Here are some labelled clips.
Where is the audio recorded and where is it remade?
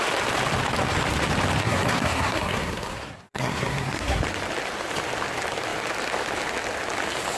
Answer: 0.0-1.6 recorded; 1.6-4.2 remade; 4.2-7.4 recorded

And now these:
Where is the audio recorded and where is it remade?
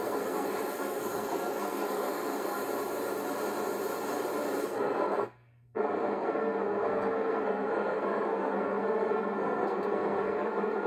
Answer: 0.0-2.6 remade; 2.6-4.6 recorded; 4.6-10.9 remade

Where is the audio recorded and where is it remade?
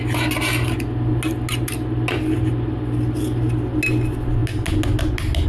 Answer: 0.0-5.5 recorded